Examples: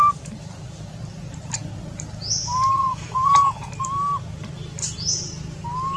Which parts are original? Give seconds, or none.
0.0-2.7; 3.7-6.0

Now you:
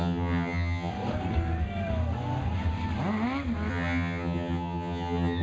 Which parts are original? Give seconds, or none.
0.9-3.7

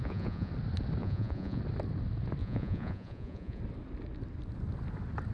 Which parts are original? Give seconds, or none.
0.5-1.0; 1.6-2.4; 3.6-5.3

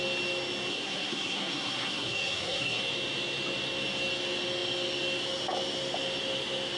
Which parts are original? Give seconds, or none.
0.0-0.7; 2.8-6.8

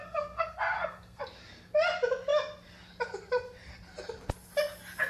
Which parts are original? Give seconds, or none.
1.2-5.1